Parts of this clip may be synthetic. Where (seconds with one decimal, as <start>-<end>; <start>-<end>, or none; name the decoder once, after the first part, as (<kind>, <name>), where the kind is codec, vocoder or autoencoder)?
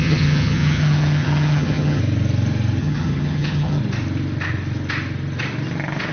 0.0-2.0 (vocoder, HiFi-GAN); 2.8-3.8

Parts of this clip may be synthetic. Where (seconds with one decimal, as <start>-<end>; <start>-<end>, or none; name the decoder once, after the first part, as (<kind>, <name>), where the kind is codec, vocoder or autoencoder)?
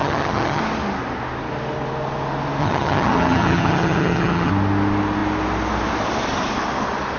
0.0-0.6 (vocoder, HiFi-GAN); 2.6-4.5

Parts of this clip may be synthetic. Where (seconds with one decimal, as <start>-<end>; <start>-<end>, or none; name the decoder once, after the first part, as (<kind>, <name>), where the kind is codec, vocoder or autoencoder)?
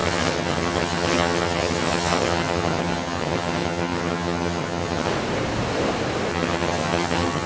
0.0-5.1 (vocoder, HiFi-GAN); 6.3-7.5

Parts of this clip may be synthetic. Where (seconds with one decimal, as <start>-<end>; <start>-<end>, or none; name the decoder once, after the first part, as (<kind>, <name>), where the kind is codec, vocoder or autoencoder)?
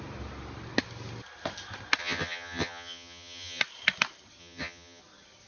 2.0-3.6 (vocoder, HiFi-GAN); 4.4-5.0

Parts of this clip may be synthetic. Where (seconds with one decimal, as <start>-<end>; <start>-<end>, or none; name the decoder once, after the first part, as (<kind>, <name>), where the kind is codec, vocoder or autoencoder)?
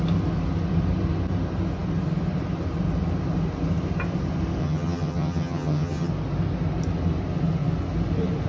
4.6-6.1 (vocoder, HiFi-GAN)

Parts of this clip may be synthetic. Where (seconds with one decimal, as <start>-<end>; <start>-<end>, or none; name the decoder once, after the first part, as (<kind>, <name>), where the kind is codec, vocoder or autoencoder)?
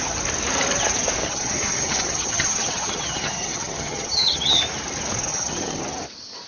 1.2-4.6 (vocoder, HiFi-GAN); 5.3-5.8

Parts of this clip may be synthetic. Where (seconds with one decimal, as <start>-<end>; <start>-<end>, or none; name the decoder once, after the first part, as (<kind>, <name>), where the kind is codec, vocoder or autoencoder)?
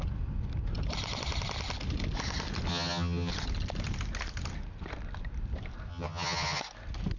2.7-3.3 (vocoder, HiFi-GAN); 5.9-6.6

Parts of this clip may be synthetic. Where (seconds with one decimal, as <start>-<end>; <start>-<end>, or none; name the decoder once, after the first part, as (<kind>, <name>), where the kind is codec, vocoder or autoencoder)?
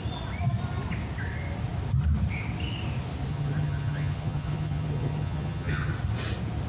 3.3-5.9 (vocoder, HiFi-GAN)